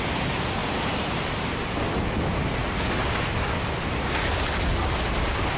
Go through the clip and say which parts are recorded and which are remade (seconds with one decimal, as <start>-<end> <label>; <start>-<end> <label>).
0.0-5.6 recorded